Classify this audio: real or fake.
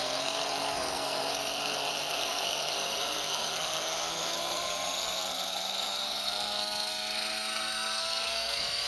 fake